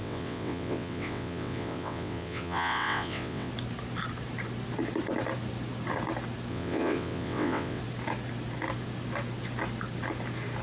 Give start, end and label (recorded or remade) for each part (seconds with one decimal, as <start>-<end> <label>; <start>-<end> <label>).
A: 0.0-3.5 remade; 3.5-6.5 recorded; 6.5-7.8 remade; 7.8-10.6 recorded